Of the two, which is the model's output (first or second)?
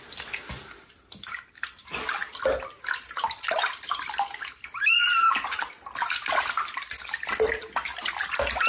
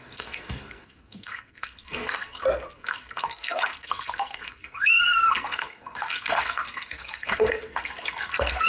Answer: second